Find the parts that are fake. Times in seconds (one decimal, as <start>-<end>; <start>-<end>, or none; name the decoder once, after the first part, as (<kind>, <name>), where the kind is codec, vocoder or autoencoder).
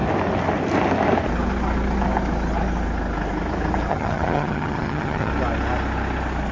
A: 3.9-5.3 (vocoder, HiFi-GAN)